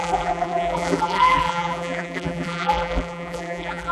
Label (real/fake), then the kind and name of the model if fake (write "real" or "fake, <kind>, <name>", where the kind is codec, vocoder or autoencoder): fake, vocoder, BigVGAN v2